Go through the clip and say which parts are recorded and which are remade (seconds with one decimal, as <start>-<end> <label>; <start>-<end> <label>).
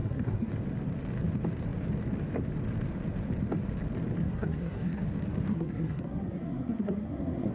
0.0-0.5 remade; 0.5-4.2 recorded; 4.2-5.0 remade; 5.0-5.5 recorded; 5.5-7.5 remade